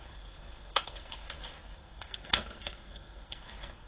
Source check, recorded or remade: remade